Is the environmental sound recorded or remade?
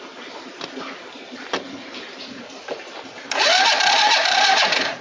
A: remade